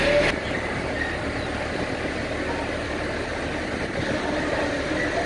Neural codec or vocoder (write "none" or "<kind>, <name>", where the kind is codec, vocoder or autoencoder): none